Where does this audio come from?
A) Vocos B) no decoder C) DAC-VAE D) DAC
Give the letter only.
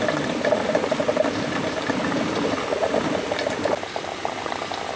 B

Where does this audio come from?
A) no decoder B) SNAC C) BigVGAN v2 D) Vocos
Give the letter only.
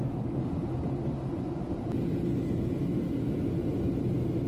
A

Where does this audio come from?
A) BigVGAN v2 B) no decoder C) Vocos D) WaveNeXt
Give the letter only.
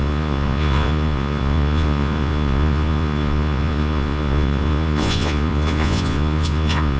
C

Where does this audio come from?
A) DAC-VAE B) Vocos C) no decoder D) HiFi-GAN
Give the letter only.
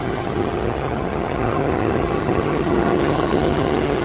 D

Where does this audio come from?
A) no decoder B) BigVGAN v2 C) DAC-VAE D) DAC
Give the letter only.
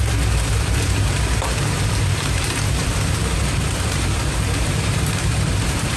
B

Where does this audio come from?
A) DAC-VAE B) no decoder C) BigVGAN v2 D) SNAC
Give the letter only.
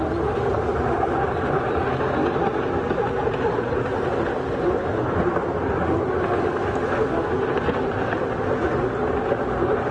B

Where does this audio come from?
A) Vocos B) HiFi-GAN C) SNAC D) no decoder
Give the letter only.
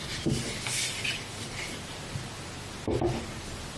D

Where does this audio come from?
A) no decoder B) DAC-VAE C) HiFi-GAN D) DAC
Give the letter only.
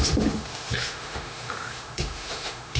B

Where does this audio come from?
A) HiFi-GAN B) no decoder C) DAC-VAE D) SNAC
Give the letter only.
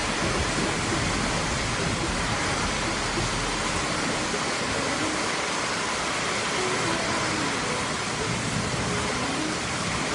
B